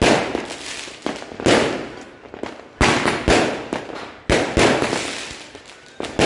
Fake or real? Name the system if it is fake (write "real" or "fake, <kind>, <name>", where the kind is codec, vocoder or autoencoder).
real